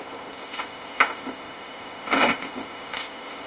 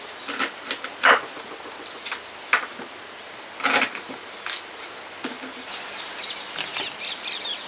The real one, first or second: second